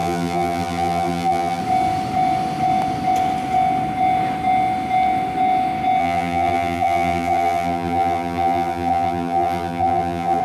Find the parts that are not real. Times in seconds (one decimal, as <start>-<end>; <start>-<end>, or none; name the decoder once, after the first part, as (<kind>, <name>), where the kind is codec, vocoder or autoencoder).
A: 0.0-1.6 (vocoder, BigVGAN v2); 6.0-10.4